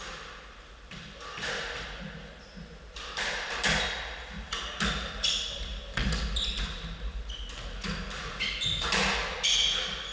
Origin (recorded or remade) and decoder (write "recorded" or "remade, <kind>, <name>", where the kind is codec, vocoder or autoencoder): recorded